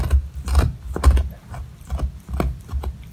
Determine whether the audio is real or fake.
real